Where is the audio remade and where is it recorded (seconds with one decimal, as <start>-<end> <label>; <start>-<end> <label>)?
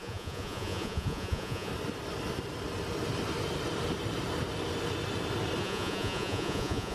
0.0-1.7 remade; 1.7-5.6 recorded; 5.6-6.9 remade